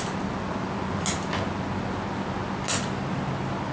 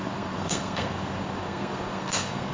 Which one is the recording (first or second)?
first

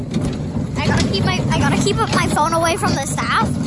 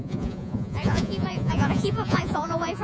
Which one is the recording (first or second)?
first